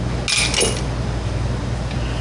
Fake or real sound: real